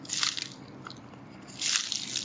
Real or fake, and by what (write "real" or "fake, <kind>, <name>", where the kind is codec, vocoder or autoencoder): real